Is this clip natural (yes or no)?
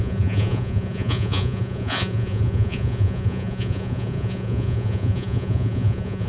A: no